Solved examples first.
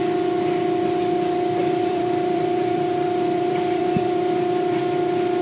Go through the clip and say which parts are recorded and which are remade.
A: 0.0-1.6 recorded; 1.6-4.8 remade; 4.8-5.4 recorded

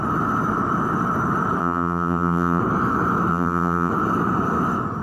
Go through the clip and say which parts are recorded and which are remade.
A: 0.0-1.6 recorded; 1.6-2.6 remade; 2.6-3.3 recorded; 3.3-3.9 remade; 3.9-5.0 recorded

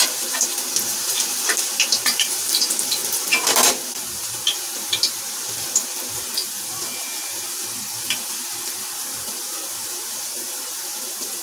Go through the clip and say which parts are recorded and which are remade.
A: 0.0-6.4 remade; 6.4-9.2 recorded; 9.2-11.4 remade

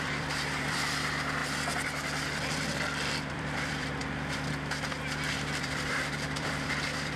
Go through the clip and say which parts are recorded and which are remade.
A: 0.0-1.4 remade; 1.4-3.3 recorded; 3.3-4.0 remade; 4.0-5.3 recorded; 5.3-7.2 remade

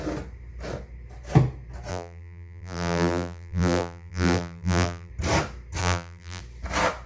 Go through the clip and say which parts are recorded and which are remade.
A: 0.0-1.9 recorded; 1.9-5.1 remade; 5.1-5.8 recorded; 5.8-6.4 remade; 6.4-7.1 recorded

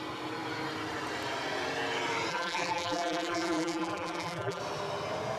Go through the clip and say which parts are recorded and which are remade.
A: 0.0-2.3 recorded; 2.3-4.6 remade; 4.6-5.4 recorded

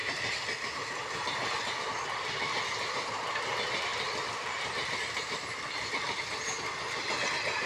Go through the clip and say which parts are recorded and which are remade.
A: 0.0-3.9 recorded; 3.9-7.2 remade; 7.2-7.7 recorded

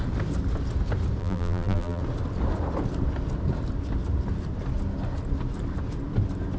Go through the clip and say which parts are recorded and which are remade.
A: 0.0-1.2 recorded; 1.2-2.0 remade; 2.0-6.6 recorded